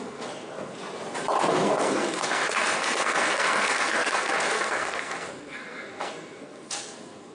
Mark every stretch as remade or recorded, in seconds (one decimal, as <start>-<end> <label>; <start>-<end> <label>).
0.0-0.8 remade; 0.8-1.5 recorded; 1.5-7.3 remade